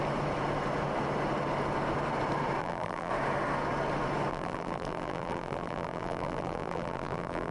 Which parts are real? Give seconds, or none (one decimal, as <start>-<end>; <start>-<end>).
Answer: 0.0-2.6; 3.1-4.3